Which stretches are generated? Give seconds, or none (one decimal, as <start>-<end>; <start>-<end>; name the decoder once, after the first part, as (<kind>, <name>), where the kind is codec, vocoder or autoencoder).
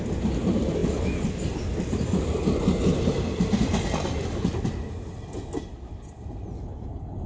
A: none